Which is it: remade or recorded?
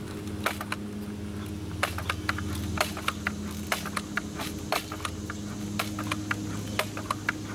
recorded